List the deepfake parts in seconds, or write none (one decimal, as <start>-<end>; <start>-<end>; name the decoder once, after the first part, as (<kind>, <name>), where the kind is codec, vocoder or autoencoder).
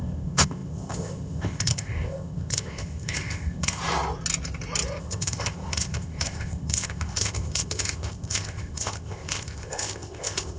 0.0-3.8 (codec, ZipCodec); 5.0-10.6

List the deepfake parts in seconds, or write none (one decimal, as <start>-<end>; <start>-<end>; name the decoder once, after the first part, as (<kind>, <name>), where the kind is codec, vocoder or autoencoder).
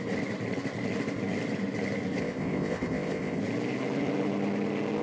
2.2-3.4 (codec, ZipCodec)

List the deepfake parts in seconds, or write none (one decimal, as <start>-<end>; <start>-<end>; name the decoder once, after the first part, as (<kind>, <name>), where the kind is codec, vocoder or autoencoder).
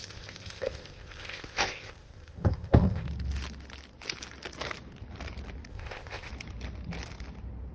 0.0-3.1 (codec, ZipCodec); 5.7-6.3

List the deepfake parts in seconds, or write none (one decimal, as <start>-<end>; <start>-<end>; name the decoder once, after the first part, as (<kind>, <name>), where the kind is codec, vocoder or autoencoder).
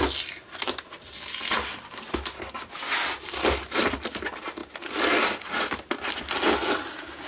none